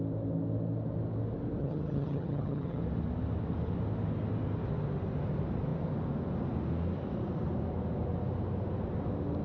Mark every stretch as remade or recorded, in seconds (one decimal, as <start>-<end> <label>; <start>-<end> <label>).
0.0-1.6 recorded; 1.6-2.8 remade; 2.8-9.4 recorded